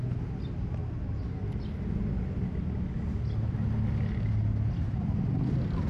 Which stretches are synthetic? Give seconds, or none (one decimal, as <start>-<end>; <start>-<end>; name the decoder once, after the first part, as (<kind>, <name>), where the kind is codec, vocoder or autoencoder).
none